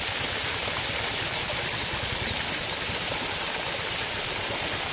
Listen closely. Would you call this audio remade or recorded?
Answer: recorded